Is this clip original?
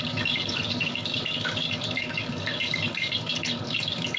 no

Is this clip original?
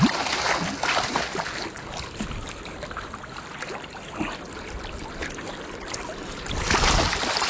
yes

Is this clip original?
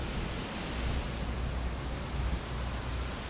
yes